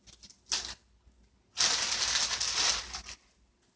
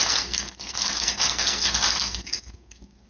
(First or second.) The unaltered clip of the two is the first